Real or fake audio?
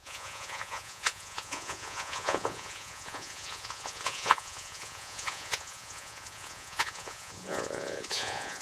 fake